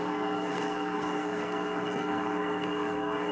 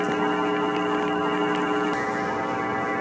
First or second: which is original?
second